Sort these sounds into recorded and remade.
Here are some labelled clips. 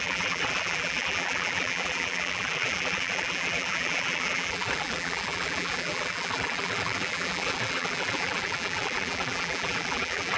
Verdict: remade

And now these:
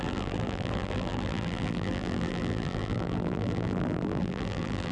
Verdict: remade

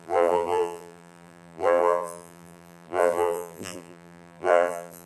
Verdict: remade